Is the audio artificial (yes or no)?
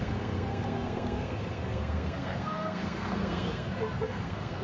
yes